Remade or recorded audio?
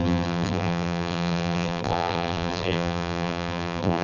remade